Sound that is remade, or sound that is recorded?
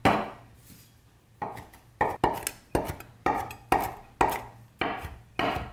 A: recorded